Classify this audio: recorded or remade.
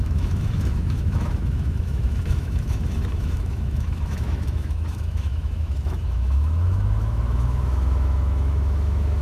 remade